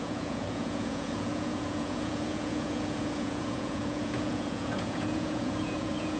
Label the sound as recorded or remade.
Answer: remade